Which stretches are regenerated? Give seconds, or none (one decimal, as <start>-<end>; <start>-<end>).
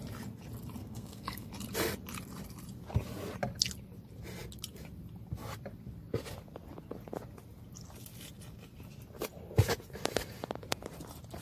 0.8-1.5